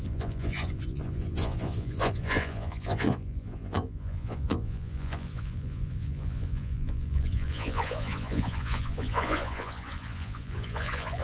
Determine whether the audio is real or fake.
fake